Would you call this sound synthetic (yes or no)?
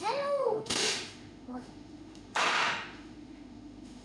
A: yes